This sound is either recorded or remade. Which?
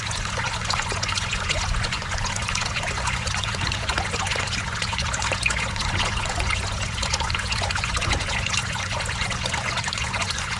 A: remade